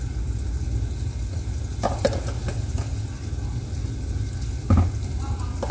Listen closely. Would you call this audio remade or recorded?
recorded